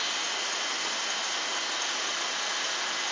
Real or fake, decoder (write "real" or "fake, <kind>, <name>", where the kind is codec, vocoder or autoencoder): real